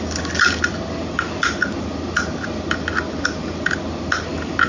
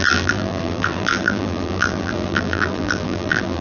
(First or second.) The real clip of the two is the first